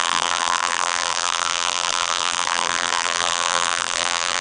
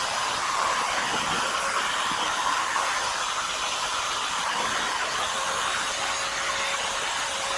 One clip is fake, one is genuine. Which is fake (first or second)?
first